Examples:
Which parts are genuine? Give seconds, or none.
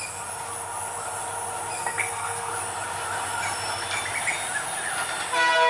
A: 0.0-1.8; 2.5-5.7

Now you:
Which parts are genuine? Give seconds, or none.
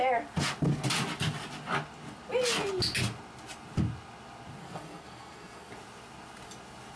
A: 0.0-4.6; 5.7-7.0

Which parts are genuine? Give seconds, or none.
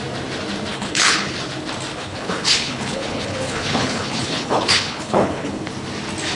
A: 0.0-0.7; 1.4-1.9; 5.7-6.3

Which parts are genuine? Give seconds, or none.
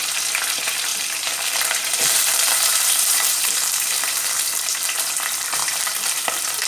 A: 0.0-0.9; 4.4-5.6; 6.3-6.7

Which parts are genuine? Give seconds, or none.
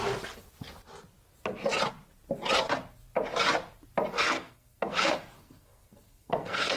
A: 0.0-4.1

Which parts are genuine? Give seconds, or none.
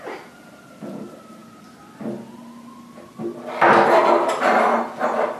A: 0.0-5.4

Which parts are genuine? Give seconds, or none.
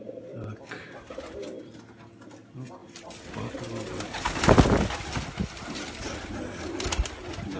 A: 0.0-7.6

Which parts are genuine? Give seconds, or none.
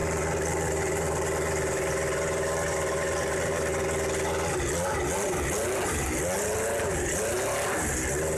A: 3.7-8.4